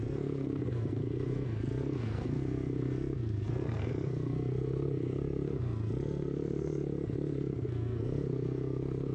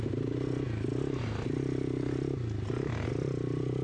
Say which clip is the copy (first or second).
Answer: first